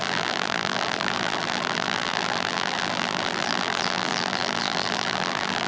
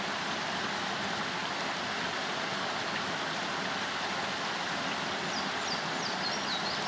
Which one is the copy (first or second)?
first